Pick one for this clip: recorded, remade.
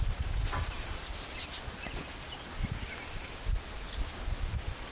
recorded